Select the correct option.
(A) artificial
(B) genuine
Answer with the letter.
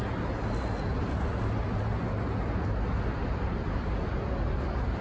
B